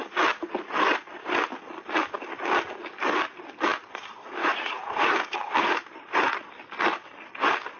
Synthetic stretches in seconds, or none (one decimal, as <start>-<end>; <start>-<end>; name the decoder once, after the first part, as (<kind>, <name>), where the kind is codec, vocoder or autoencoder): 4.4-6.3 (vocoder, BigVGAN v2)